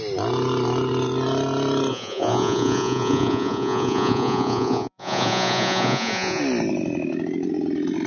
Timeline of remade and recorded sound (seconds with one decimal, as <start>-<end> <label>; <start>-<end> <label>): 0.0-1.9 recorded; 1.9-6.4 remade; 6.4-8.1 recorded

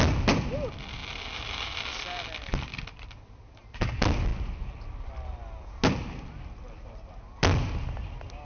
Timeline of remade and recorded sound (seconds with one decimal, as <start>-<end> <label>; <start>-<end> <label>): 0.0-8.4 recorded